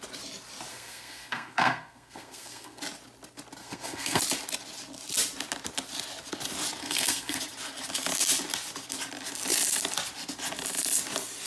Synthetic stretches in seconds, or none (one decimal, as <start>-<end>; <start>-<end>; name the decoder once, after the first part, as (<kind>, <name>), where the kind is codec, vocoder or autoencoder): 0.7-2.8 (codec, SNAC); 3.6-4.2; 6.8-7.4